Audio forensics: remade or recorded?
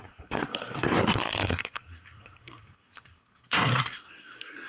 remade